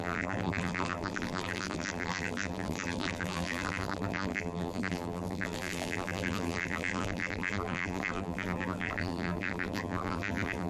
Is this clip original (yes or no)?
no